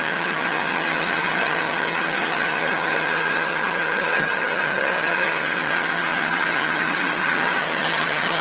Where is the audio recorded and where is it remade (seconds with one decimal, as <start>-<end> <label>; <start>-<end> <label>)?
0.0-8.4 remade